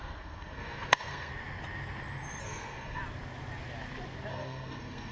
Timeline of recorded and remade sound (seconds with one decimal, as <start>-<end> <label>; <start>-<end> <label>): 0.0-1.3 remade; 1.3-2.4 recorded; 2.4-3.0 remade; 3.0-4.3 recorded; 4.3-5.1 remade

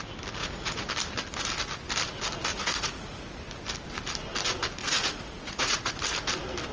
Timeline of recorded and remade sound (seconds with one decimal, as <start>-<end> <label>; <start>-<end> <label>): 0.0-0.4 recorded; 0.4-0.9 remade; 0.9-2.5 recorded; 2.5-3.2 remade; 3.2-4.8 recorded; 4.8-6.0 remade; 6.0-6.7 recorded

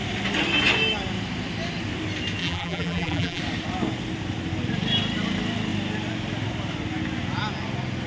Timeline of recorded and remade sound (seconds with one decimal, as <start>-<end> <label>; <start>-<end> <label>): 0.0-2.4 recorded; 2.4-3.4 remade; 3.4-8.1 recorded

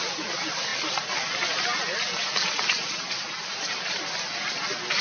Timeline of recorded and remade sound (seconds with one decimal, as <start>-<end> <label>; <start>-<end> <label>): 0.0-5.0 recorded

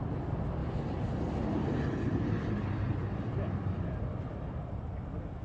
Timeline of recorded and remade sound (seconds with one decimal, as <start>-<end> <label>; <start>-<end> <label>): 0.0-0.6 recorded; 0.6-2.5 remade; 2.5-3.0 recorded; 3.0-4.2 remade; 4.2-5.4 recorded

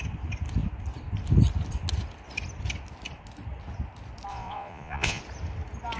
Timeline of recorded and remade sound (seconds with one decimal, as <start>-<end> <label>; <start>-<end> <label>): 0.0-4.3 recorded; 4.3-5.2 remade; 5.2-6.0 recorded